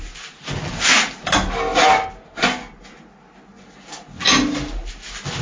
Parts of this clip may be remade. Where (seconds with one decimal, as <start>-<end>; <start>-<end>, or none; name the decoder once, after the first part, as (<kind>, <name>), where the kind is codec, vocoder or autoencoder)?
none